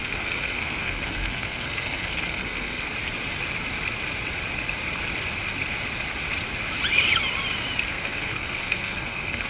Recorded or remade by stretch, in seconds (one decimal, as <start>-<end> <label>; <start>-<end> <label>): 0.0-2.9 remade; 2.9-7.9 recorded; 7.9-9.5 remade